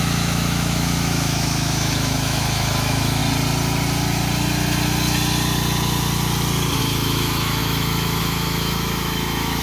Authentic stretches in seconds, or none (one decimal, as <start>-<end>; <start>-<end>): 3.2-6.8